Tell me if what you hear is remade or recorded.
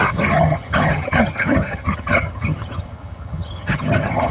remade